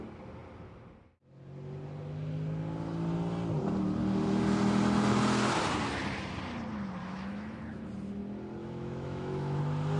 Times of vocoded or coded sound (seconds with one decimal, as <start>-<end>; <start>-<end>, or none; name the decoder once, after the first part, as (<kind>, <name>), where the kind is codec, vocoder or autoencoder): 7.0-7.6 (autoencoder, DAC-VAE); 8.6-9.6